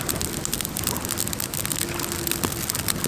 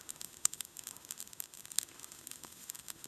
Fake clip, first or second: second